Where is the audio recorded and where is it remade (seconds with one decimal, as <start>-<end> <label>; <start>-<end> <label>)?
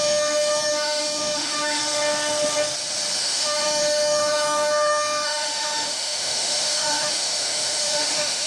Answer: 0.0-1.8 remade; 1.8-3.2 recorded; 3.2-8.5 remade